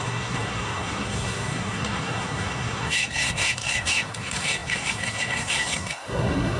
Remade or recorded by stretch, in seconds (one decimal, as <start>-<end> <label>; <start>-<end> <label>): 0.0-6.6 remade